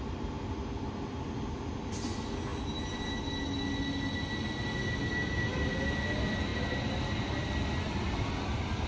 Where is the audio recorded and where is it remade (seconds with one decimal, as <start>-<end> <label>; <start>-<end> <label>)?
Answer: 0.0-8.9 recorded